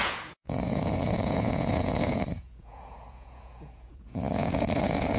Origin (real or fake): fake